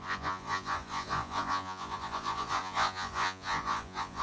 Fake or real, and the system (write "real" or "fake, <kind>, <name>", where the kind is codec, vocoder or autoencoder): fake, vocoder, Vocos